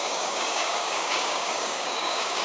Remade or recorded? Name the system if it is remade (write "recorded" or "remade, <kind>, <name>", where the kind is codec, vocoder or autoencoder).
remade, codec, DAC